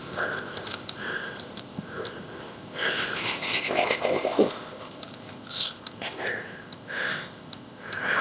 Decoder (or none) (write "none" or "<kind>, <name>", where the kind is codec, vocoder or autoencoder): codec, ZipCodec